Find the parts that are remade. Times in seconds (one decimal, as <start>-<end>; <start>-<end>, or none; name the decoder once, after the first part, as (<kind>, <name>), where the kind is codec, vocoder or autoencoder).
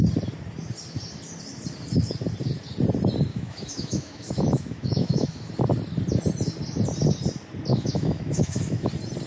3.3-5.5 (autoencoder, DAC-VAE); 7.7-8.9